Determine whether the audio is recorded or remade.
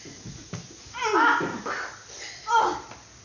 recorded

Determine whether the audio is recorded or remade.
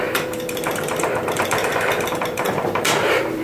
remade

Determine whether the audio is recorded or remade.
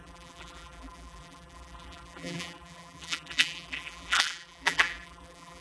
remade